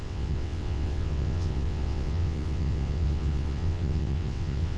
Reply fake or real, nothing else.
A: fake